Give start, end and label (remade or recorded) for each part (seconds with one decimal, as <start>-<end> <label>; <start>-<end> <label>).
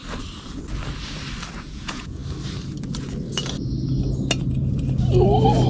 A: 0.0-1.6 recorded; 1.6-2.2 remade; 2.2-5.7 recorded